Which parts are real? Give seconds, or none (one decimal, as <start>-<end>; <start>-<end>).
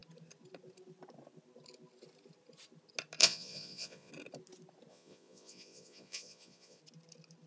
0.0-3.2; 4.1-4.9; 6.8-7.5